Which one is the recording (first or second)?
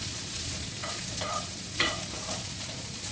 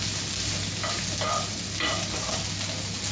second